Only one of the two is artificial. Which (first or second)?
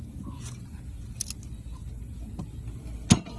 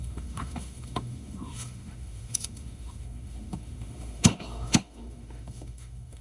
second